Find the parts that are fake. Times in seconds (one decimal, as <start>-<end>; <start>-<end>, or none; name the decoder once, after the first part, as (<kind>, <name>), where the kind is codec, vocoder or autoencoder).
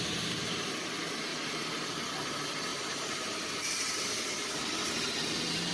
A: 1.3-1.9 (vocoder, BigVGAN v2); 2.7-5.7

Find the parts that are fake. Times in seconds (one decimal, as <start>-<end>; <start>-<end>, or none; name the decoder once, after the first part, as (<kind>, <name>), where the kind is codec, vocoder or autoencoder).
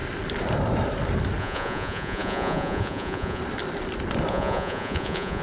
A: 1.4-3.4 (vocoder, Vocos); 4.3-5.4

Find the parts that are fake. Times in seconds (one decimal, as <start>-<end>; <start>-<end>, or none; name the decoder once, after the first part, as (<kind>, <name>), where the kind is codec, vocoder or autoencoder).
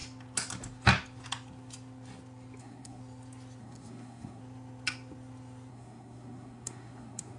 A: 2.6-3.0 (codec, SNAC); 3.6-4.4; 5.7-7.4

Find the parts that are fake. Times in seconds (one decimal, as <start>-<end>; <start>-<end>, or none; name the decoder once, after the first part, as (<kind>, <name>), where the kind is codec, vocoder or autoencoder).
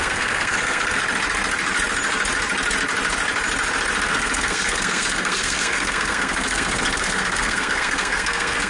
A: 0.0-1.0 (codec, SNAC); 4.1-8.7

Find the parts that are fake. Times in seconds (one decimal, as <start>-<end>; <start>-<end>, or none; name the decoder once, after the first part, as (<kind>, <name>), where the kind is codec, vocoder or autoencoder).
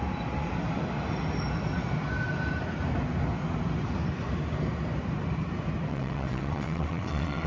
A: 5.9-7.5 (vocoder, WaveNeXt)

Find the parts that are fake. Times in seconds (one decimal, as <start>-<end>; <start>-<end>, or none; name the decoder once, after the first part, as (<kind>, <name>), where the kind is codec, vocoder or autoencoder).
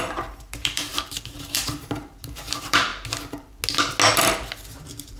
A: 0.0-2.9 (vocoder, BigVGAN v2); 4.5-5.2